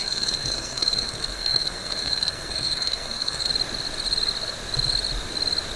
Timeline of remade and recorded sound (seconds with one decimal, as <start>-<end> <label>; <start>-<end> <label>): 0.0-3.5 remade; 3.5-5.8 recorded